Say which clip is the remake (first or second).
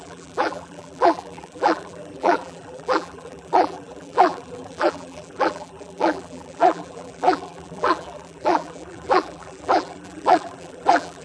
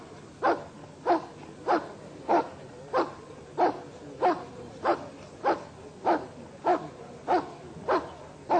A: first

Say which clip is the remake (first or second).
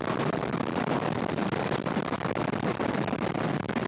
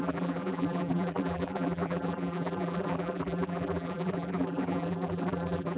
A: second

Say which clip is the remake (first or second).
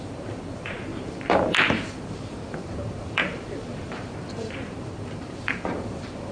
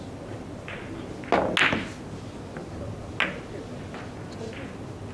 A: first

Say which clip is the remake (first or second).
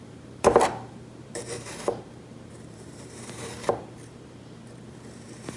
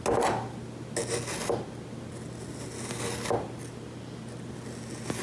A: first